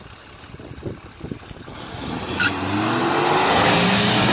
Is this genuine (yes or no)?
yes